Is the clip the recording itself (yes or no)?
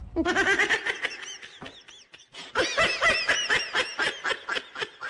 yes